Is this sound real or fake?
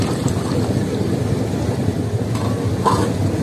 real